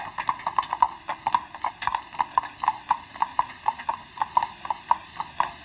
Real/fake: real